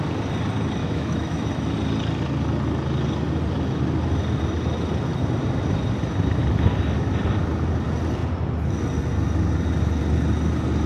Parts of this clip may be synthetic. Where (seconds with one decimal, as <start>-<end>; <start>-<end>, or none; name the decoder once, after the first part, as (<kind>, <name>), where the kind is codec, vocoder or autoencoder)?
0.8-1.5 (autoencoder, DAC-VAE)